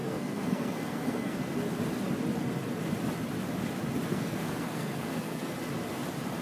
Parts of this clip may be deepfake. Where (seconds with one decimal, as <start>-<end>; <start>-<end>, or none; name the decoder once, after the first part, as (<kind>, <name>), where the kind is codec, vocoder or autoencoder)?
0.0-1.4 (codec, SNAC); 4.1-5.5